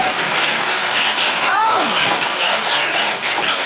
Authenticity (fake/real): fake